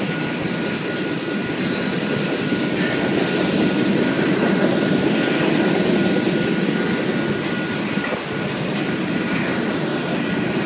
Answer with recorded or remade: recorded